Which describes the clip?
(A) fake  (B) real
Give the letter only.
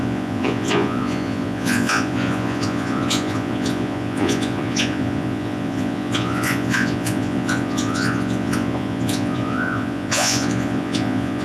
A